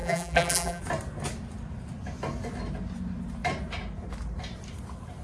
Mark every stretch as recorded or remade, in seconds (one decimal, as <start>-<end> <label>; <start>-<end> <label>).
0.0-0.8 remade; 0.8-5.2 recorded